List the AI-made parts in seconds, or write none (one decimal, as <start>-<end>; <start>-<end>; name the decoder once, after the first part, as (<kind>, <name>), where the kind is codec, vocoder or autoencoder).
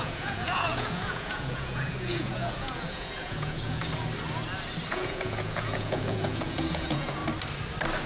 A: 0.0-3.8 (vocoder, Vocos); 4.9-7.2